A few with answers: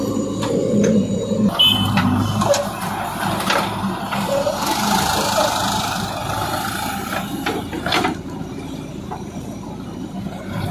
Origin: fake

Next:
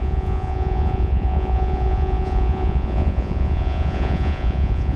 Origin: fake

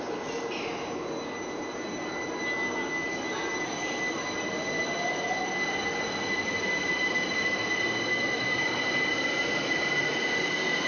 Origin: real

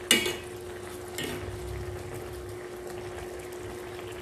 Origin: real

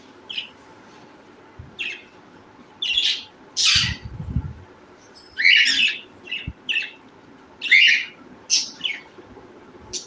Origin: real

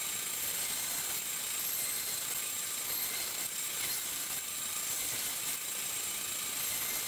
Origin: fake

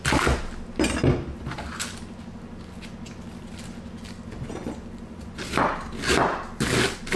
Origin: real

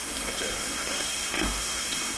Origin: fake